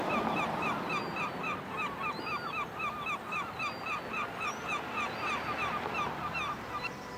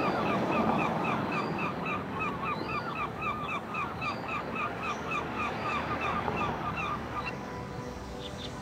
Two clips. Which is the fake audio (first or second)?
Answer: second